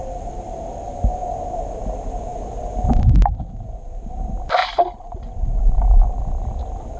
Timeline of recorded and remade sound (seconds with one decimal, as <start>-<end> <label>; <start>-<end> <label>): 0.0-4.6 recorded; 4.6-5.6 remade; 5.6-7.0 recorded